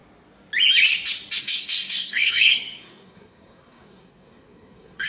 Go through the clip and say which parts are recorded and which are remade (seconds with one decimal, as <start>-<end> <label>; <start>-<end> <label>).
0.0-1.4 recorded; 1.4-5.1 remade